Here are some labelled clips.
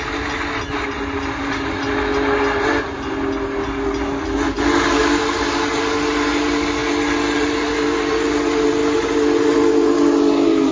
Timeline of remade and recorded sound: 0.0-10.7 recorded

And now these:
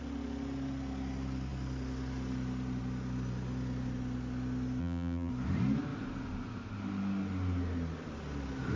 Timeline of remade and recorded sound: 0.0-4.8 recorded; 4.8-5.3 remade; 5.3-8.8 recorded

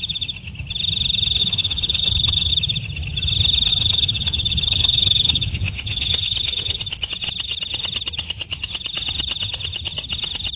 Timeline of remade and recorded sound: 0.0-1.4 recorded; 1.4-2.5 remade; 2.5-3.7 recorded; 3.7-7.1 remade; 7.1-10.6 recorded

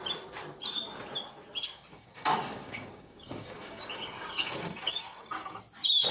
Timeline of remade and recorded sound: 0.0-1.9 recorded; 1.9-5.6 remade; 5.6-6.1 recorded

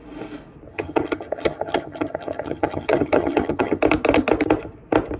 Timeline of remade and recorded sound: 0.0-0.7 recorded; 0.7-3.8 remade; 3.8-5.2 recorded

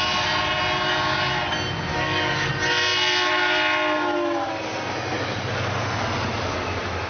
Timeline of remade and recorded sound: 0.0-1.9 recorded; 1.9-2.5 remade; 2.5-7.1 recorded